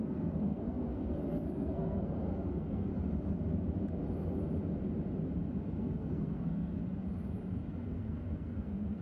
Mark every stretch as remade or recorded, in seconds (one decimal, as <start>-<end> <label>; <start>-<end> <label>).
0.0-2.9 remade; 2.9-5.8 recorded; 5.8-6.8 remade; 6.8-7.7 recorded; 7.7-9.0 remade

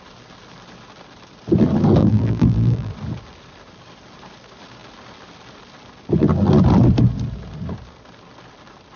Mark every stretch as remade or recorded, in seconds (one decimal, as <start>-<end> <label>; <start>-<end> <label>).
0.0-2.0 recorded; 2.0-2.9 remade; 2.9-9.0 recorded